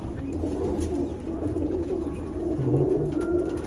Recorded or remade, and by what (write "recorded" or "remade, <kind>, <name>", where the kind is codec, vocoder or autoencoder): recorded